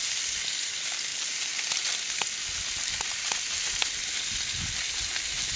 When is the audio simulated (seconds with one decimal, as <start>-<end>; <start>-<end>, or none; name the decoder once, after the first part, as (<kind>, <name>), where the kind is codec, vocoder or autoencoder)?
none

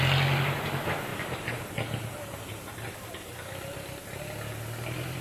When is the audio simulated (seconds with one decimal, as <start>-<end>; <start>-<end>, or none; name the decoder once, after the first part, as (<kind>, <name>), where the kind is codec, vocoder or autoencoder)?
1.1-4.2 (vocoder, BigVGAN v2)

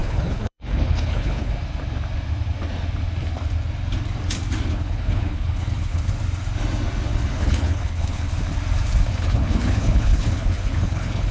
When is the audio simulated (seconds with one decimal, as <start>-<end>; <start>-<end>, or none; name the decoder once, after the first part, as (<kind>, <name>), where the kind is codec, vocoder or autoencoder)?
0.0-1.5 (codec, HILCodec); 4.7-6.1; 7.3-8.3; 9.1-11.3

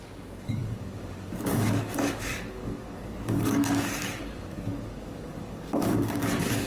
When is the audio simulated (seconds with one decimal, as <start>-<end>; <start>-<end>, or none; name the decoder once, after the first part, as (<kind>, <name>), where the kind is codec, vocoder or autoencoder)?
0.0-6.7 (codec, DAC)